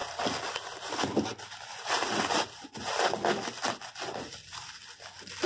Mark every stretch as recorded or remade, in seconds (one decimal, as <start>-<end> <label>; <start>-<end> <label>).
0.0-5.5 recorded